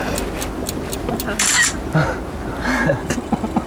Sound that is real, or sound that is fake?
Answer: real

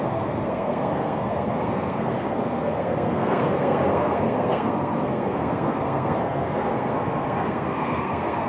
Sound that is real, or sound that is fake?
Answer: fake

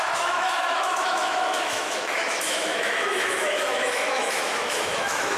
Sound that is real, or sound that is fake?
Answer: fake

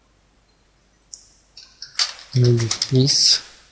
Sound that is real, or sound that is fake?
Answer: real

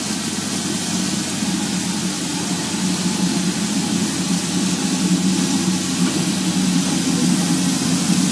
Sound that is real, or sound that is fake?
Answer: real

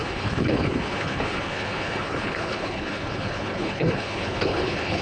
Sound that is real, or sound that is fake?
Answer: fake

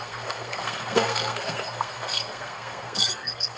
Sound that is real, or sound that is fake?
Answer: fake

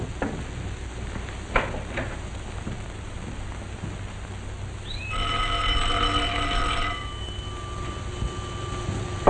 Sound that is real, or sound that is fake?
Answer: real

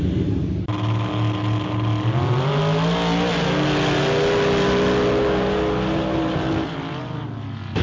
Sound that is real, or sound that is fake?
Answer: real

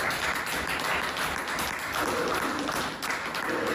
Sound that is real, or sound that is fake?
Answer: real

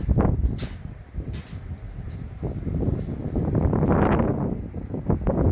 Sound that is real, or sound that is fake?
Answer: real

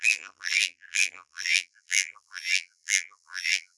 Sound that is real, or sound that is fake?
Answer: fake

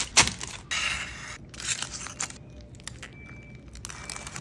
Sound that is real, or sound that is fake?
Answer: real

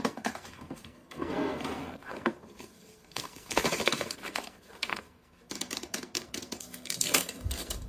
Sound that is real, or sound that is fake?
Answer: fake